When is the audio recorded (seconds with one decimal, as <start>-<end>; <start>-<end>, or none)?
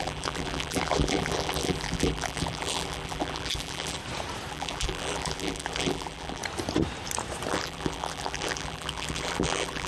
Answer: 4.0-4.5; 6.4-7.5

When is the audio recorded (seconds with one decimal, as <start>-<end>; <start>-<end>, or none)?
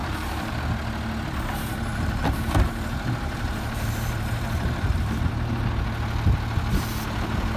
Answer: 0.5-1.9; 5.3-7.6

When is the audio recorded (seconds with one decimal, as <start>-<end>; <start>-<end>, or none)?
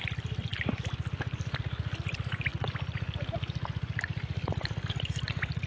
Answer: 0.0-5.7